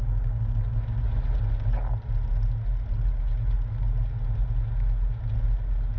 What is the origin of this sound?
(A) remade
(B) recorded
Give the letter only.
B